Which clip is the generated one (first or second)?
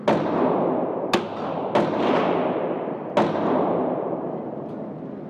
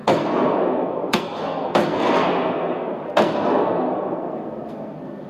second